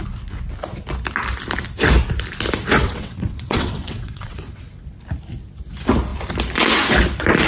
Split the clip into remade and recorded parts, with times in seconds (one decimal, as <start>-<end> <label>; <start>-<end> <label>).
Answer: 0.0-2.8 recorded; 2.8-4.7 remade; 4.7-7.5 recorded